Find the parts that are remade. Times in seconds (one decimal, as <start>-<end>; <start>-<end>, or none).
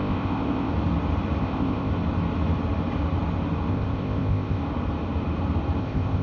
0.0-0.7; 1.4-1.9; 3.7-4.6; 5.8-6.2